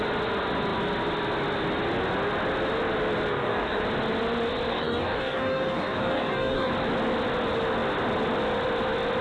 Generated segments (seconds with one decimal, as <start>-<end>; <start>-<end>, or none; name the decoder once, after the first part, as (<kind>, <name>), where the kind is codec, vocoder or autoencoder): 3.3-3.8 (codec, DAC); 4.7-6.7